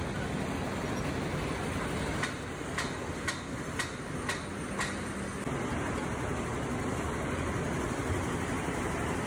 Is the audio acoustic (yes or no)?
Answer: yes